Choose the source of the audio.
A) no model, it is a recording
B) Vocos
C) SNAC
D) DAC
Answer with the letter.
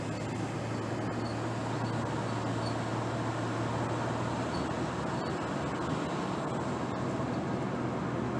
A